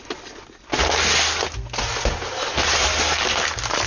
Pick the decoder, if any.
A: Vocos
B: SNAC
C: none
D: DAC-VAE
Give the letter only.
C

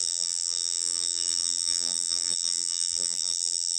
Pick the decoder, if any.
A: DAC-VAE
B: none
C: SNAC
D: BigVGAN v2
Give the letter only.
D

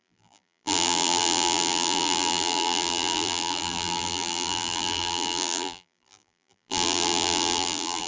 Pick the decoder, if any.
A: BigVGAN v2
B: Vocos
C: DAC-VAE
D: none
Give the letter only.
A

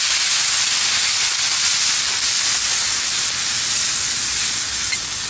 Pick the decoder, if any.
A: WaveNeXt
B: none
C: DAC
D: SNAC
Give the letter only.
B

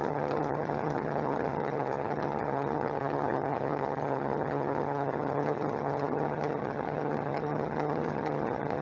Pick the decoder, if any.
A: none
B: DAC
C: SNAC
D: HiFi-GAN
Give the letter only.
D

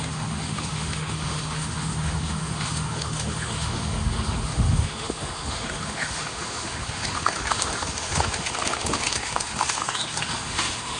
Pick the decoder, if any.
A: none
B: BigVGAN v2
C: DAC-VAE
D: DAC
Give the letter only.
C